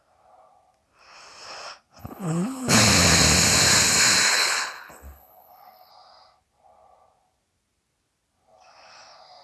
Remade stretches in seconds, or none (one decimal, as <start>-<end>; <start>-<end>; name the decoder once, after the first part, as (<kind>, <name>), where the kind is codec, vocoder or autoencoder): 2.0-2.8 (codec, HILCodec); 4.3-5.9